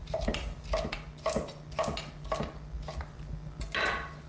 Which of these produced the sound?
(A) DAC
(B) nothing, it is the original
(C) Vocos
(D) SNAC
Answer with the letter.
B